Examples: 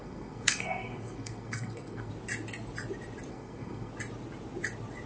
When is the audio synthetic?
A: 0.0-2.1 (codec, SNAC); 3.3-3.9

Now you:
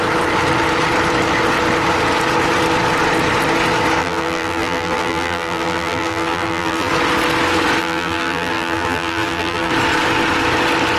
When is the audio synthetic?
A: 4.0-6.9 (vocoder, BigVGAN v2); 7.8-9.7